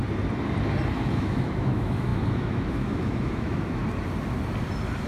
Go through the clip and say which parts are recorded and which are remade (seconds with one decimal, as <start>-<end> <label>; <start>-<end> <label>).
0.0-0.9 recorded; 0.9-3.8 remade; 3.8-5.1 recorded